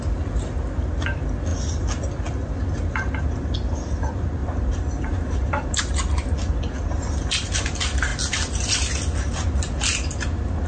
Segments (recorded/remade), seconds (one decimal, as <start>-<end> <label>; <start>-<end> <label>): 0.0-4.4 recorded; 4.4-5.8 remade; 5.8-10.7 recorded